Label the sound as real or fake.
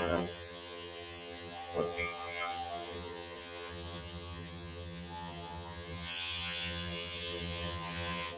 fake